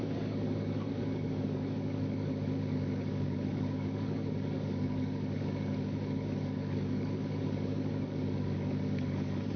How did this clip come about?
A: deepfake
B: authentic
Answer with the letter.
A